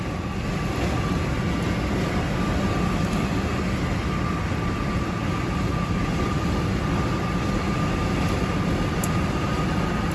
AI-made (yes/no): no